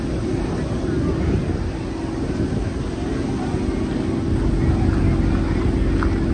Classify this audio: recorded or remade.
recorded